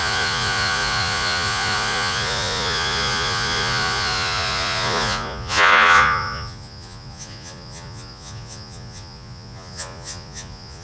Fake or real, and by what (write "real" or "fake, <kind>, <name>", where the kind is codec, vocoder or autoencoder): fake, vocoder, Vocos